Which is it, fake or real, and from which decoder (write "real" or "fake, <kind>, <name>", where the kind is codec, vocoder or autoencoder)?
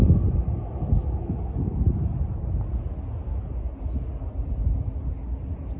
real